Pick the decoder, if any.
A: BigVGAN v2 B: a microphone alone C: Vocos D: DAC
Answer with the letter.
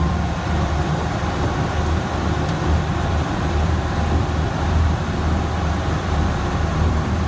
A